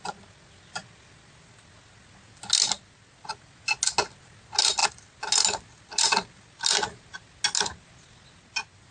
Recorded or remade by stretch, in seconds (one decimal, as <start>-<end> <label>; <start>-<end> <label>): 0.0-8.9 recorded